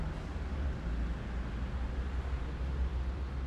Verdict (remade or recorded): recorded